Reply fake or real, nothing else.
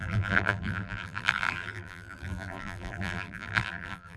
fake